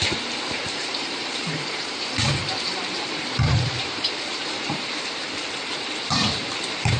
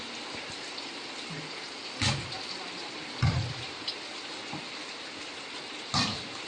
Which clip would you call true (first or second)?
second